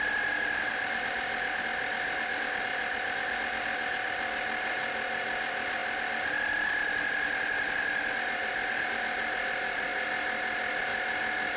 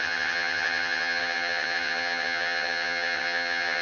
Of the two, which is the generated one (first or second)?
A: second